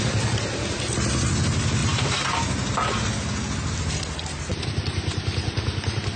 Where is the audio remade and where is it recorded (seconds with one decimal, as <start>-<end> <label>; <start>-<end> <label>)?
0.0-6.2 recorded